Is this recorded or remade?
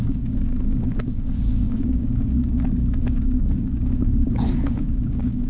remade